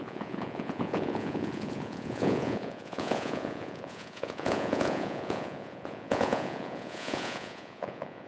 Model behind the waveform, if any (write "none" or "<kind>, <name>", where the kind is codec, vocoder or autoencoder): vocoder, Vocos